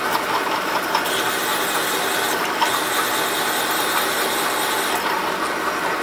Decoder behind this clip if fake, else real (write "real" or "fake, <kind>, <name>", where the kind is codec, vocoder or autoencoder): real